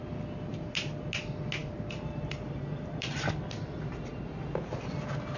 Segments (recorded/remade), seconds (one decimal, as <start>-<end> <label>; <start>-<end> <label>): 0.0-1.6 recorded; 1.6-3.4 remade; 3.4-5.4 recorded